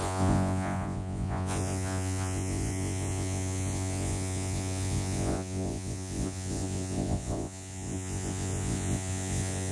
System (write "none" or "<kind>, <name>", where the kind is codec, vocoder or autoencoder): vocoder, Vocos